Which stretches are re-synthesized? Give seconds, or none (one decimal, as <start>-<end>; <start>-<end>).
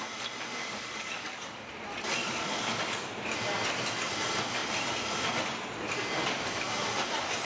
0.6-1.7; 2.2-3.1